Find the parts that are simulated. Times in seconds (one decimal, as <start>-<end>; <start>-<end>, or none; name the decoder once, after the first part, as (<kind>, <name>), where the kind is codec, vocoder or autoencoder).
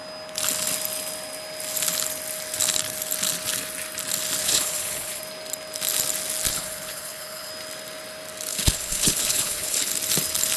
4.4-5.2 (codec, HILCodec); 6.5-7.5; 8.5-9.9